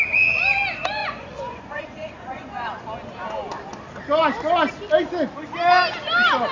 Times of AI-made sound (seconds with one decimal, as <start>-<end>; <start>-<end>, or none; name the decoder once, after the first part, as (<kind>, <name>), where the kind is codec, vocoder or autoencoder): 1.0-2.8 (vocoder, Vocos)